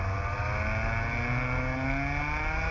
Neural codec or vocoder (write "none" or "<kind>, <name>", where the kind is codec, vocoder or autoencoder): none